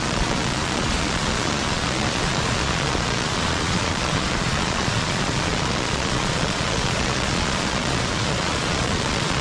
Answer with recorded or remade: remade